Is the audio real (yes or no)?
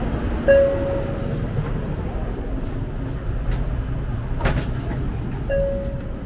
yes